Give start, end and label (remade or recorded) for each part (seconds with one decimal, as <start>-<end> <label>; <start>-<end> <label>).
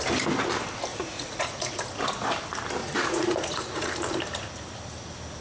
0.0-0.9 recorded; 0.9-1.7 remade; 1.7-2.8 recorded; 2.8-3.9 remade; 3.9-5.4 recorded